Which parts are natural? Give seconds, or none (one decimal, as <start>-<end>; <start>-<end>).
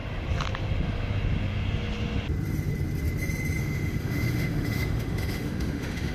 0.0-3.6